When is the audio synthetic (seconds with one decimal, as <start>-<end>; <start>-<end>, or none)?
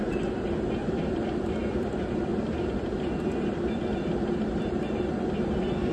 0.8-1.5; 2.3-5.9